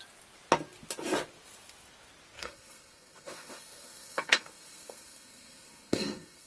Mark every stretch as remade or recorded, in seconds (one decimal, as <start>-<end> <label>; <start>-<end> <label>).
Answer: 0.0-2.4 recorded; 2.4-6.5 remade